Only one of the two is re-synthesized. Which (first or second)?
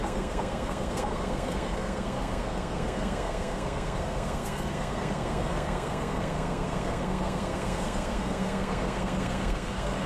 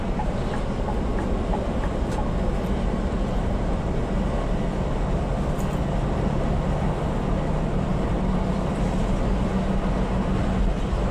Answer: first